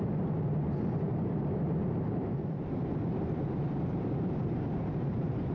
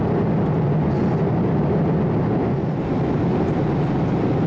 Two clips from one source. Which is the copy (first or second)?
first